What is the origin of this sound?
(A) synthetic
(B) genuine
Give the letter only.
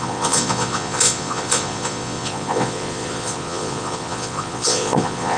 A